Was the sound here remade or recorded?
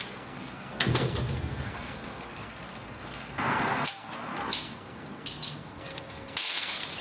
remade